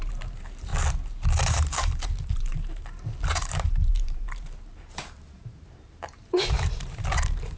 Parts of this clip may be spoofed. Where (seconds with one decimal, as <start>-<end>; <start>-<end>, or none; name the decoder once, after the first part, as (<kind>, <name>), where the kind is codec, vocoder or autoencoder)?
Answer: 0.0-0.7 (vocoder, BigVGAN v2); 1.5-7.6